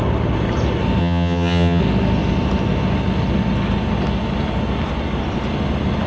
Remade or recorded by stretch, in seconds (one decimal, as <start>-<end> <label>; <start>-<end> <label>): 0.0-1.0 recorded; 1.0-1.8 remade; 1.8-6.1 recorded